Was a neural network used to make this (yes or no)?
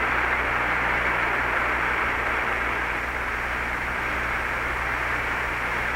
yes